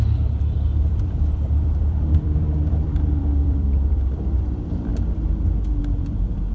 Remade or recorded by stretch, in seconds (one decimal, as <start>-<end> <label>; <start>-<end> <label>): 0.0-4.9 remade; 4.9-5.8 recorded; 5.8-6.5 remade